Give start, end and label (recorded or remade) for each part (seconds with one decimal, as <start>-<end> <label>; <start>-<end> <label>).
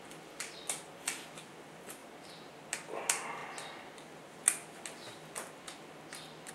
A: 0.0-2.0 recorded; 2.0-2.5 remade; 2.5-6.5 recorded